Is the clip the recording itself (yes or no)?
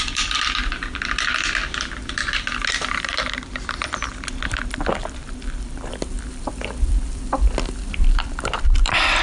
no